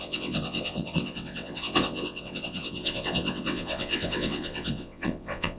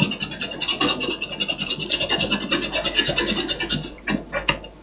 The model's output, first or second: first